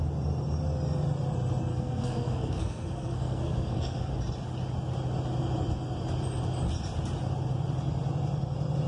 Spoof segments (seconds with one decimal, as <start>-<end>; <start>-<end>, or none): 1.7-4.1